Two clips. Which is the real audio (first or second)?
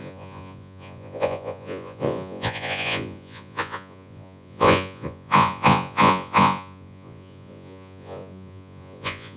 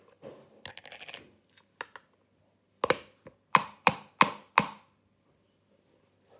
second